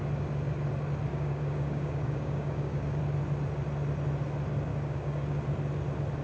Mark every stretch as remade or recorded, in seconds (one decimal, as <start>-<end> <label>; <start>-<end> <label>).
0.0-1.1 recorded; 1.1-3.0 remade; 3.0-4.7 recorded; 4.7-5.4 remade; 5.4-6.2 recorded